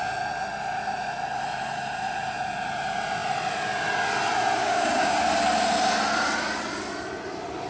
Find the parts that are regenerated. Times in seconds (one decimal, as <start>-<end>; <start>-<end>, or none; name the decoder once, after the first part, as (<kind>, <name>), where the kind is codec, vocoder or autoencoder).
4.6-5.2 (codec, DAC)